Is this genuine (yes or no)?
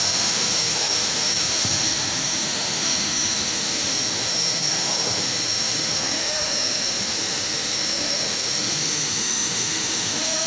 no